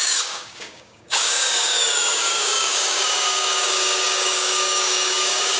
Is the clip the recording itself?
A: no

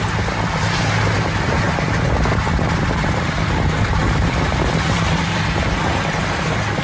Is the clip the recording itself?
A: yes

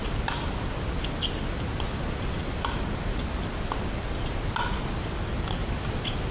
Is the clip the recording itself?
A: yes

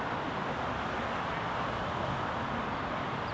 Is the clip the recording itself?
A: yes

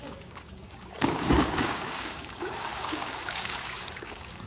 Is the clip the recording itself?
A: no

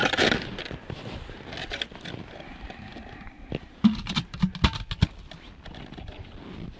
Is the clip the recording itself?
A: yes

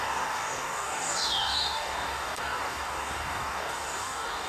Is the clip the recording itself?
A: no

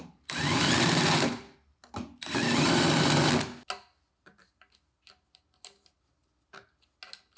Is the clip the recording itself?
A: yes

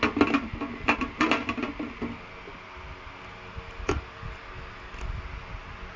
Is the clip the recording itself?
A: yes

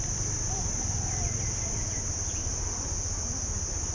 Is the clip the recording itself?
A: yes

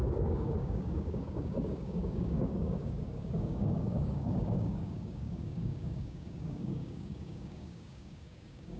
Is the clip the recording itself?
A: no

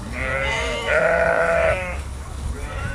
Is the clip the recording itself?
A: no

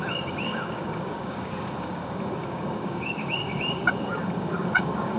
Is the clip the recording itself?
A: no